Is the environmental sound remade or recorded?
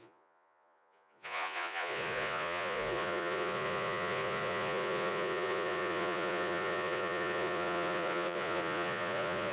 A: remade